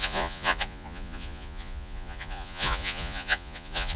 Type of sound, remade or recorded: remade